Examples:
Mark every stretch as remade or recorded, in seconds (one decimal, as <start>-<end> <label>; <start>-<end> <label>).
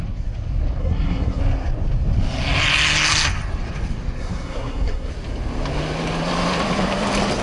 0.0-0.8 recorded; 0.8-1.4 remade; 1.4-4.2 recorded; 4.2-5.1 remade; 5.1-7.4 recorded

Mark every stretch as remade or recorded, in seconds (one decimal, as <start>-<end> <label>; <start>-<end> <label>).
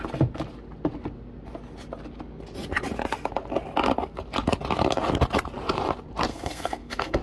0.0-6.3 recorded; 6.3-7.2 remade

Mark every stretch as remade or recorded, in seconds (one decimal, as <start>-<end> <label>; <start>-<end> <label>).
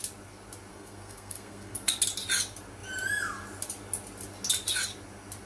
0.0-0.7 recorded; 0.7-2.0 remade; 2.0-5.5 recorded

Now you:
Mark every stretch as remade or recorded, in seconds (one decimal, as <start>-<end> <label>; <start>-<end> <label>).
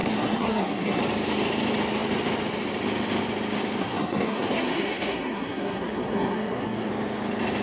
0.0-1.0 remade; 1.0-3.8 recorded; 3.8-6.9 remade; 6.9-7.6 recorded